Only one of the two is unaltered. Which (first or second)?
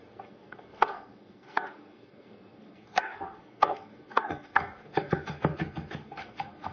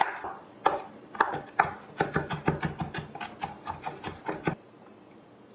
second